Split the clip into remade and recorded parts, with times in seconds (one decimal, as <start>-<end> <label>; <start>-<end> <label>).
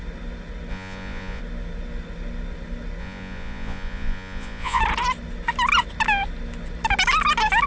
0.0-0.7 recorded; 0.7-1.4 remade; 1.4-3.0 recorded; 3.0-4.8 remade; 4.8-7.7 recorded